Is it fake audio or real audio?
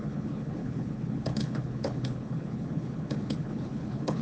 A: fake